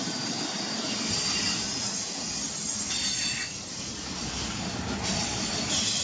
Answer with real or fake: real